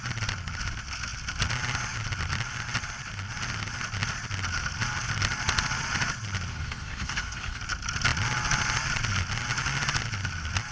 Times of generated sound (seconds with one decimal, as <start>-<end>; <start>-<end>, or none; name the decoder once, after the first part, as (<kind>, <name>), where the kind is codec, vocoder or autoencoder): 6.5-7.6 (codec, DAC)

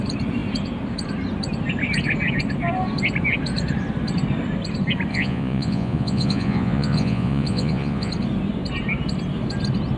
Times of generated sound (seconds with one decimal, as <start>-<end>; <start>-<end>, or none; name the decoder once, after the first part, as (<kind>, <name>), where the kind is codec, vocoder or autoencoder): 5.1-8.1 (vocoder, Vocos)

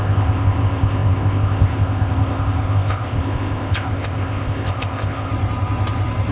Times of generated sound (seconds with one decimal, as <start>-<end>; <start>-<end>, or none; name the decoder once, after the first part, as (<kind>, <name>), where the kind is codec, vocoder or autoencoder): 0.0-5.3 (codec, ZipCodec)

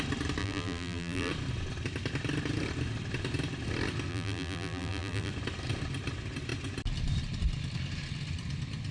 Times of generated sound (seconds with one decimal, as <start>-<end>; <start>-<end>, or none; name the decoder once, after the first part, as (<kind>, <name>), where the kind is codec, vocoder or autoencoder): 0.4-1.3 (vocoder, BigVGAN v2); 4.1-5.3

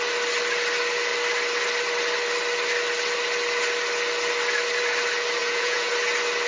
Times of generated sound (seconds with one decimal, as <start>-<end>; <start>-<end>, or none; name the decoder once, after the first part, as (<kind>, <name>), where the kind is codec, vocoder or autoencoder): 5.4-5.9 (vocoder, Vocos)